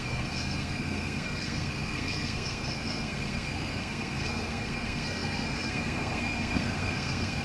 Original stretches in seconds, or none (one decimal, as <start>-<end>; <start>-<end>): none